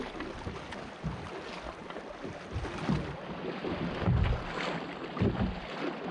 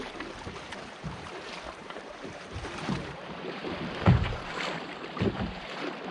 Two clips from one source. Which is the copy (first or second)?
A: second